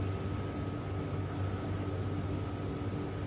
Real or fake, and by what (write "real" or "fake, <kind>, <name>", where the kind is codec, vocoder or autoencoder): real